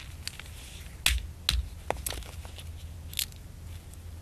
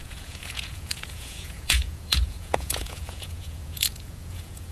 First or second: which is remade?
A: second